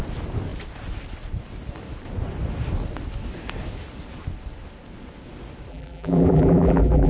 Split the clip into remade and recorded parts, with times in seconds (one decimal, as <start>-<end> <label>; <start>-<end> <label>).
0.0-5.7 recorded; 5.7-7.1 remade